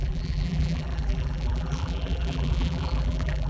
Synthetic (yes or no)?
yes